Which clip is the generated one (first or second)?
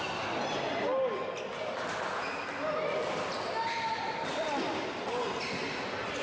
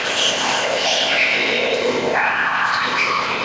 second